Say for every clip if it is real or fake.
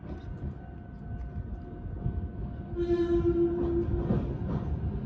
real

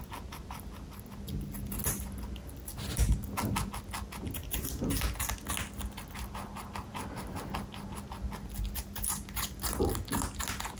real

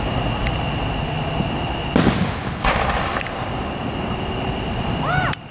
real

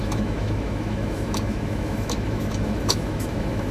fake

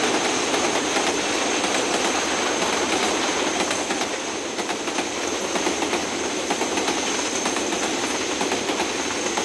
real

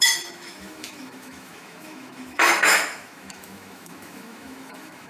fake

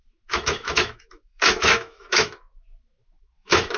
fake